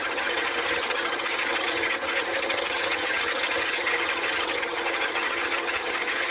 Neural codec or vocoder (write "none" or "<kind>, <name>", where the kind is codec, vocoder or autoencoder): vocoder, HiFi-GAN